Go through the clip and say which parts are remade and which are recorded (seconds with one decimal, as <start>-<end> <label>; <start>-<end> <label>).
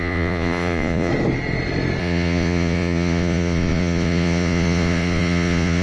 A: 0.0-1.1 remade; 1.1-2.0 recorded; 2.0-5.8 remade